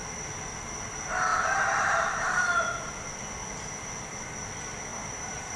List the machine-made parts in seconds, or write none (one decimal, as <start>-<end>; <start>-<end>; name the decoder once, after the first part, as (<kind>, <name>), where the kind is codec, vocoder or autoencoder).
0.0-0.6 (vocoder, BigVGAN v2); 1.3-2.6; 3.4-4.2; 4.9-5.6